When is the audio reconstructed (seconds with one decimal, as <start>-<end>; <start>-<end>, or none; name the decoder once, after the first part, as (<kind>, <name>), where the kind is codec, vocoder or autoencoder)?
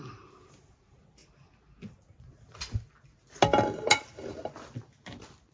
none